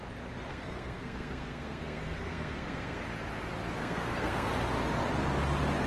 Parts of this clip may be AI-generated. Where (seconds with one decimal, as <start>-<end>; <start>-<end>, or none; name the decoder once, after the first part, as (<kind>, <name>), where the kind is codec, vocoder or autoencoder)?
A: 0.5-3.0 (codec, SNAC); 3.8-4.5